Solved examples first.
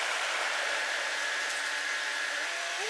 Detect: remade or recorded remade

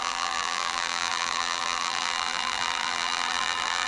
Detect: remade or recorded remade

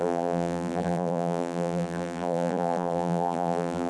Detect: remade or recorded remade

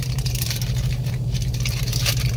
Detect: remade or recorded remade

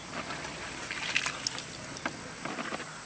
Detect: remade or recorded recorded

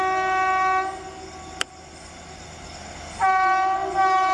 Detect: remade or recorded recorded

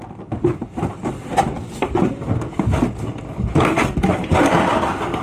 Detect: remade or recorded remade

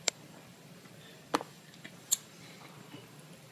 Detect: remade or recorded remade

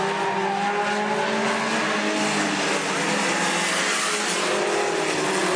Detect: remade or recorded recorded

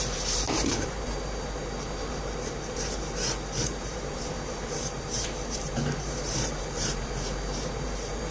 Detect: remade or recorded remade